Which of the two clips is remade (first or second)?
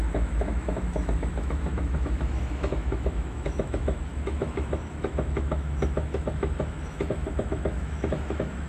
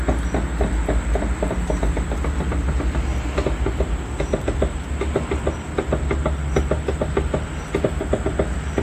first